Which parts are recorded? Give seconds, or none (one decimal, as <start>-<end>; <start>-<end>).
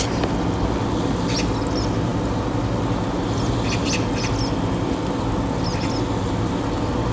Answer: 0.0-7.1